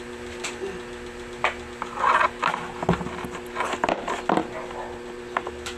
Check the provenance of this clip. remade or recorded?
recorded